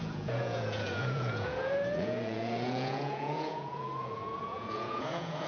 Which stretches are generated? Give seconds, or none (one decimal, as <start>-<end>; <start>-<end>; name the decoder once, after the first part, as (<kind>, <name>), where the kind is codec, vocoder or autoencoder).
0.0-5.5 (vocoder, Vocos)